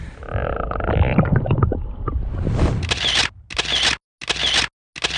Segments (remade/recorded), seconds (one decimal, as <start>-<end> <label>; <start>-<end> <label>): 0.0-5.2 recorded

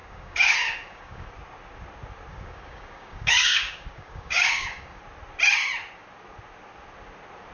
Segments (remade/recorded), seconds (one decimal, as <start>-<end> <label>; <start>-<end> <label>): 0.0-1.3 remade; 1.3-2.3 recorded; 2.3-5.0 remade; 5.0-7.5 recorded

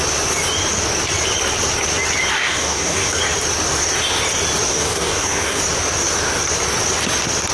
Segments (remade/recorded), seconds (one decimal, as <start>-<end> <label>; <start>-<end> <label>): 0.0-2.3 recorded; 2.3-3.2 remade; 3.2-4.7 recorded; 4.7-5.6 remade; 5.6-7.5 recorded

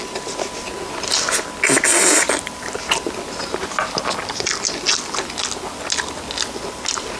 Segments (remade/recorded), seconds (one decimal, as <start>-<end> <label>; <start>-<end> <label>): 0.0-7.2 recorded

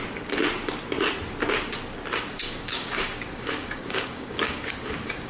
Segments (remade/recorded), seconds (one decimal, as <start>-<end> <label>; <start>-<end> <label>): 0.0-2.3 recorded; 2.3-5.3 remade

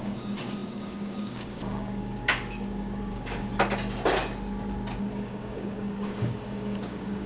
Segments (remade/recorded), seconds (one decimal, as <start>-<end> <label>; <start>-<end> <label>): 0.0-3.5 remade; 3.5-5.1 recorded; 5.1-7.3 remade